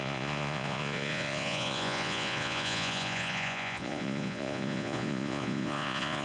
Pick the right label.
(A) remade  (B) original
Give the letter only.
A